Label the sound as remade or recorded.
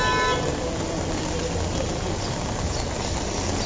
recorded